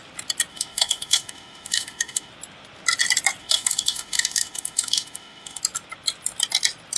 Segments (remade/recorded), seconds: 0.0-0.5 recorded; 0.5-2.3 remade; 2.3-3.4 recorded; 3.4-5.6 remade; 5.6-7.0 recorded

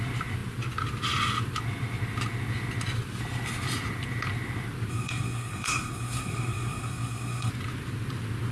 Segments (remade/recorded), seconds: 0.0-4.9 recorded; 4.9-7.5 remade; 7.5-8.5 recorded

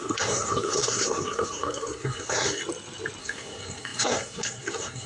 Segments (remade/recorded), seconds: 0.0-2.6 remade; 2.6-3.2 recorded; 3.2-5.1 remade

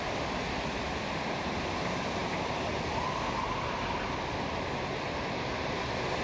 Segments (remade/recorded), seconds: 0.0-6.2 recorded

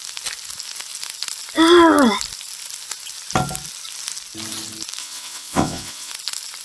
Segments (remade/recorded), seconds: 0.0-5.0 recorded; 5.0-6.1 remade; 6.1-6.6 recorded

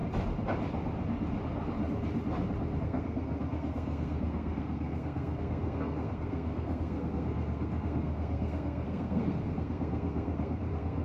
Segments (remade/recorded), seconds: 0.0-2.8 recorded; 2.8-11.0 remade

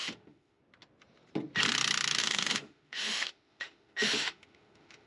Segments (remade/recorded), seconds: 0.0-0.6 remade; 0.6-2.2 recorded; 2.2-5.1 remade